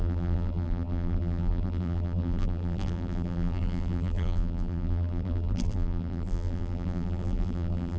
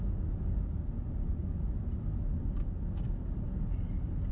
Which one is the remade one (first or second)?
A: first